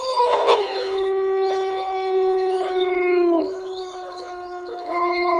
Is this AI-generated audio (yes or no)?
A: yes